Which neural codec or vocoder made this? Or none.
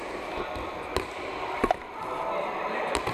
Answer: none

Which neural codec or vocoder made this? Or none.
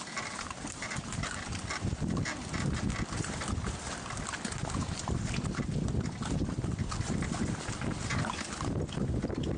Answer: none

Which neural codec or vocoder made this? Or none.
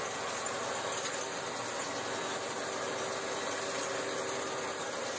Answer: none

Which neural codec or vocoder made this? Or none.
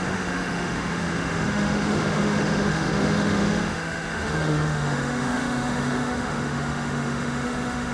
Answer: autoencoder, DAC-VAE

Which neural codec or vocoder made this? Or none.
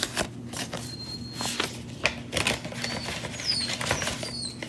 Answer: none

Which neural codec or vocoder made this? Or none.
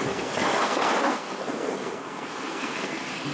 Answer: codec, SNAC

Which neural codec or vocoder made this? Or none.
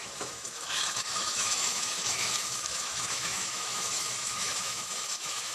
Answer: autoencoder, DAC-VAE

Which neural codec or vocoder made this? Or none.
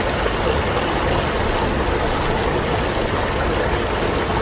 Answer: none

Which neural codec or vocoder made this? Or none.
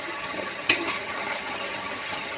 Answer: vocoder, HiFi-GAN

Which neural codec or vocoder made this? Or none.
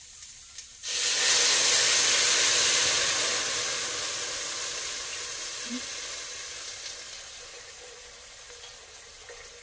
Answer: none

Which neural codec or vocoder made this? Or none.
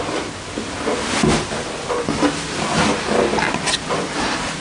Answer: none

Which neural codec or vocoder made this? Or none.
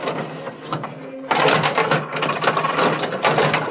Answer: none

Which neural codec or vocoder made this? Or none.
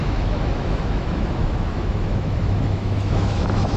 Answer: autoencoder, DAC-VAE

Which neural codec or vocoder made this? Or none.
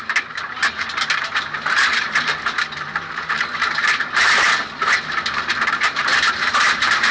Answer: vocoder, BigVGAN v2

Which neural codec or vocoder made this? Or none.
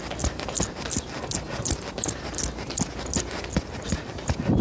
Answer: none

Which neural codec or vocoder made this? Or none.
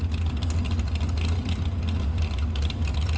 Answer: none